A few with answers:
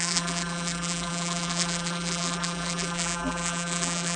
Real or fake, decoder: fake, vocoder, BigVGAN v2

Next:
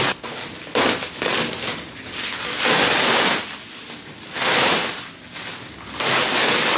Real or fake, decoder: real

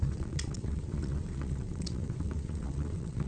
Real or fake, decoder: fake, vocoder, WaveNeXt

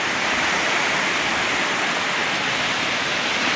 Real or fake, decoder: real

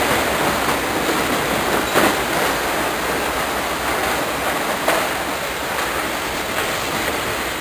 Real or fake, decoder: real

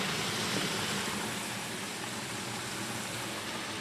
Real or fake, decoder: real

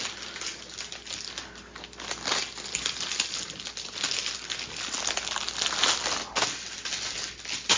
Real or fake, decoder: real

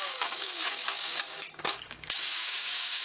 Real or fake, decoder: fake, codec, DAC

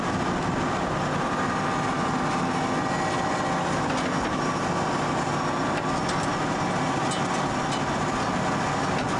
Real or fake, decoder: real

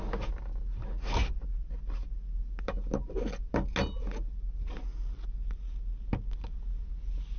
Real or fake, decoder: real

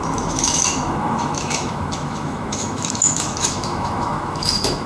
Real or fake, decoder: fake, autoencoder, DAC-VAE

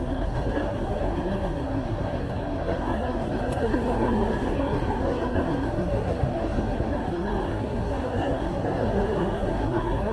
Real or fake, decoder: fake, codec, SNAC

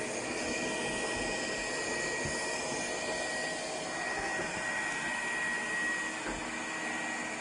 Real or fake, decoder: real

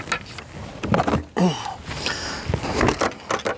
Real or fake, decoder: real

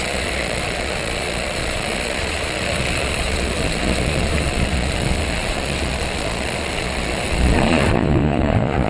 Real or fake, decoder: fake, vocoder, Vocos